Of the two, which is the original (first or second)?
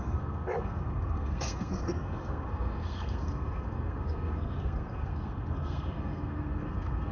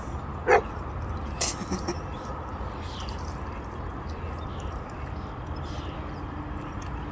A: second